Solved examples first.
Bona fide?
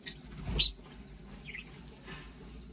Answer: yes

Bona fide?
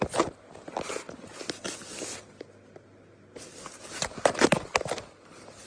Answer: yes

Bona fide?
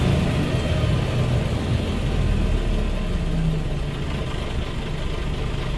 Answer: yes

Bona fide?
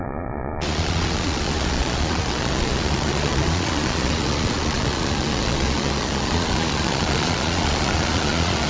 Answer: no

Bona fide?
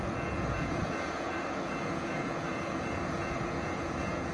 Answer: no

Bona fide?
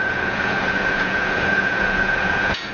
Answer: no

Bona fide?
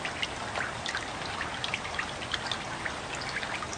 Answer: yes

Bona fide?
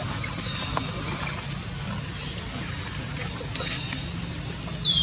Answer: yes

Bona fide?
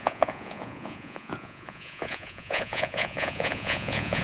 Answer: no